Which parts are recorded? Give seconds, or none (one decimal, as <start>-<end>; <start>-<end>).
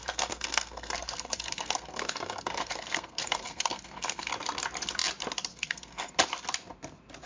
4.3-5.5; 6.1-7.3